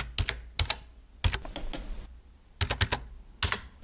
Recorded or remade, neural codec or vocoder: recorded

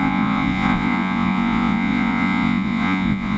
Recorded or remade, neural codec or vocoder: remade, vocoder, Vocos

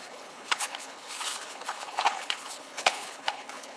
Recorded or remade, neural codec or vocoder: remade, codec, HILCodec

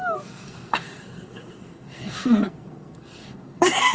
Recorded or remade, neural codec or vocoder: remade, codec, SNAC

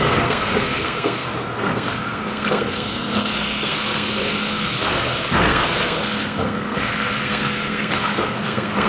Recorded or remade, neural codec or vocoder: remade, codec, SNAC